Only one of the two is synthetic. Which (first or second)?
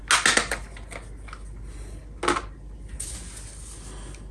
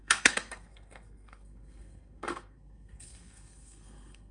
second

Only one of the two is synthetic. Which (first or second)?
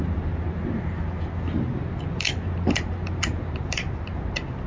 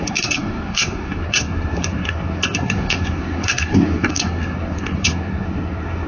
second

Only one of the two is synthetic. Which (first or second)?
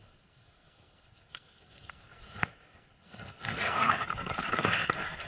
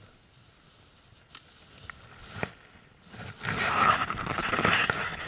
first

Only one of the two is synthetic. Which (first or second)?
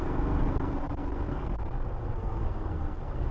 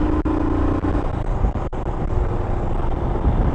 first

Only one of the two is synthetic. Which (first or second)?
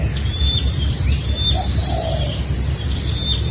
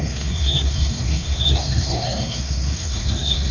second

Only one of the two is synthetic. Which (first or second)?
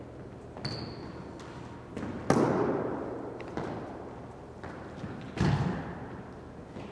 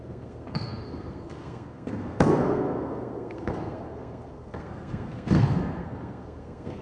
second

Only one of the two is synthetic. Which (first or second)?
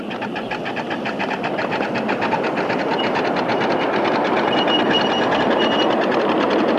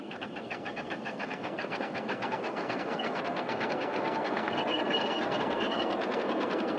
second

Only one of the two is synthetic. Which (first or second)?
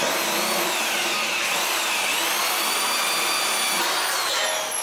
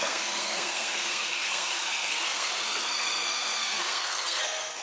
second